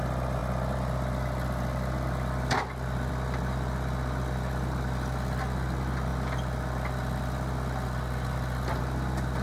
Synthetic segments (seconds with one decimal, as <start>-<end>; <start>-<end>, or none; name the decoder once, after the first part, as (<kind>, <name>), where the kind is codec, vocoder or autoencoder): none